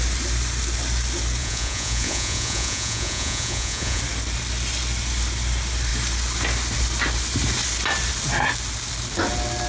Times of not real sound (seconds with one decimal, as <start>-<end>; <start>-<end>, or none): 1.4-4.0